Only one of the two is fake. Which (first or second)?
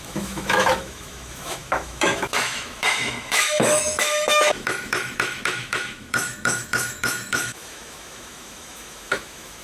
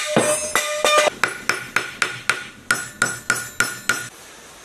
first